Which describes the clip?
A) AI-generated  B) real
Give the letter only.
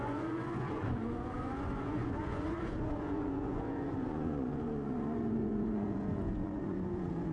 A